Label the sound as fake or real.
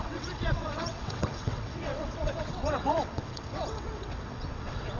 fake